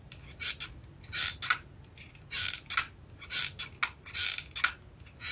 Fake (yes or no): no